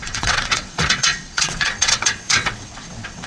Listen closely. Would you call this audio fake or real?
fake